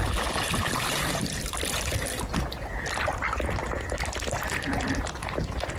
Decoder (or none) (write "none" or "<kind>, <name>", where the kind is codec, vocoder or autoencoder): none